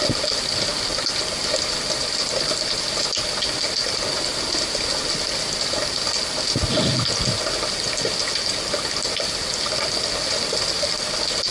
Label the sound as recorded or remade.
recorded